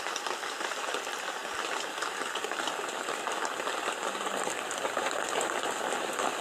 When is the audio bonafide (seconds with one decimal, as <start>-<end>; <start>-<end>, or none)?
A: 0.0-6.4